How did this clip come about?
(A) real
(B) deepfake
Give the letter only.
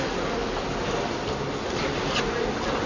A